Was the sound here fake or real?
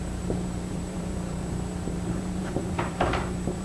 fake